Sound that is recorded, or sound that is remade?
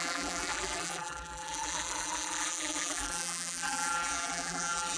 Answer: remade